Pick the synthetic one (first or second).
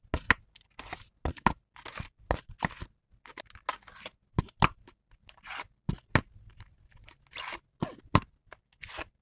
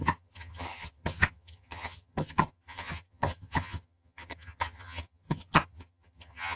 second